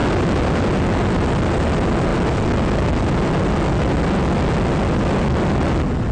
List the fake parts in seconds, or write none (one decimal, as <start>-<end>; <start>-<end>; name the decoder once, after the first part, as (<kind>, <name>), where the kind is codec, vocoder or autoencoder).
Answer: none